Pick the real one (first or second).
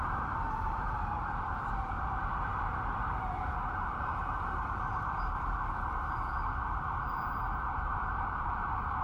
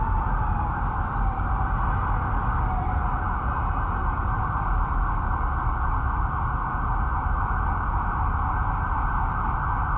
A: second